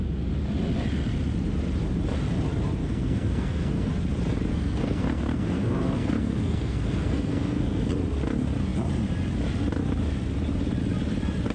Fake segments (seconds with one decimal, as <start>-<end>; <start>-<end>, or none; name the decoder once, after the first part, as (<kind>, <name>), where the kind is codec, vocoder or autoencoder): 2.8-3.9 (codec, SNAC); 4.5-7.9